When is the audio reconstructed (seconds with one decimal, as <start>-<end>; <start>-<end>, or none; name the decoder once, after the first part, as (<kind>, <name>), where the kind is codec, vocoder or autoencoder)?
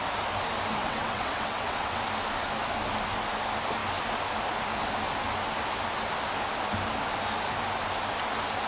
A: 0.8-2.0 (vocoder, WaveNeXt)